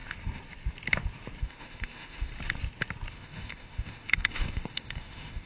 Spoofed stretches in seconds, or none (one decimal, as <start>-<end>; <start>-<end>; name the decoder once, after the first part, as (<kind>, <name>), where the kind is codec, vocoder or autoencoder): 1.4-2.3 (autoencoder, DAC-VAE); 3.1-5.5